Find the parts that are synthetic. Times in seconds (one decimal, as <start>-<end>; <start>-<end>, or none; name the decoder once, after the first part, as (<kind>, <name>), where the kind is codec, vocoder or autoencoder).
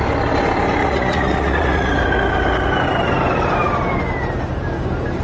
0.8-1.9 (vocoder, Vocos)